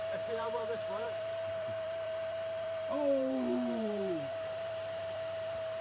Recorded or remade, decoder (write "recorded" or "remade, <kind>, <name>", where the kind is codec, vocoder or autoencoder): remade, vocoder, BigVGAN v2